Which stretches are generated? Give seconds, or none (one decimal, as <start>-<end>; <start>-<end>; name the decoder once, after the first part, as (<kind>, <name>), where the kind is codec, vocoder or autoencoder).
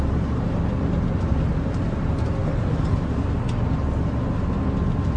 none